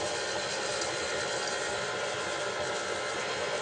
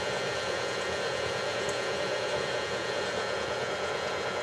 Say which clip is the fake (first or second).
second